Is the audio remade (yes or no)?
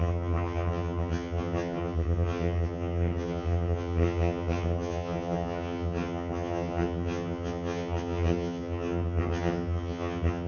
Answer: yes